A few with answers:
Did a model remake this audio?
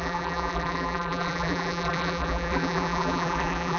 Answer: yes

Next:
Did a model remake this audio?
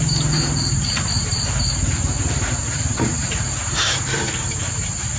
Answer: yes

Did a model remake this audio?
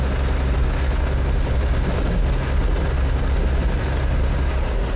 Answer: no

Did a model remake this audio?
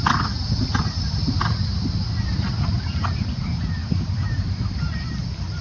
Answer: no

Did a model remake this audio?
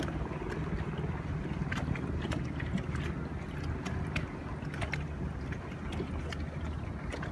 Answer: no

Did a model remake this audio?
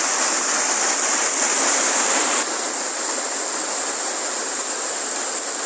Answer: no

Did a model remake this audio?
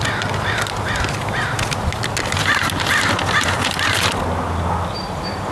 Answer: no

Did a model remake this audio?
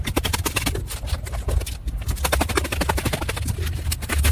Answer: no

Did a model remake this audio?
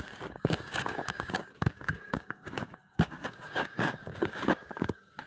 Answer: yes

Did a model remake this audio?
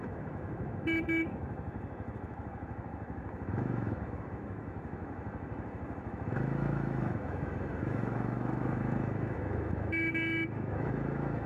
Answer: yes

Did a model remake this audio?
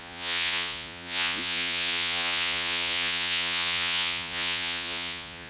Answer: yes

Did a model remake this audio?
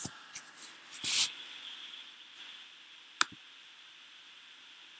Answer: no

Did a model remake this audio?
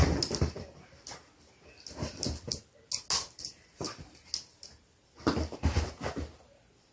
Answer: no